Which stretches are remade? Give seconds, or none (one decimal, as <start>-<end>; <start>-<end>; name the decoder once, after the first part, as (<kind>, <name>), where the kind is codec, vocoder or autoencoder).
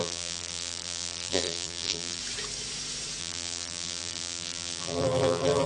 0.0-2.2 (vocoder, BigVGAN v2); 3.2-5.7